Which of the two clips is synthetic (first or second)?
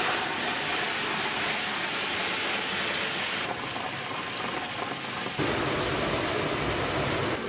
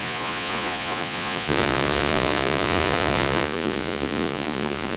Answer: second